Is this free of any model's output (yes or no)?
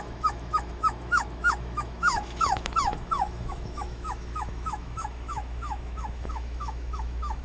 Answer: no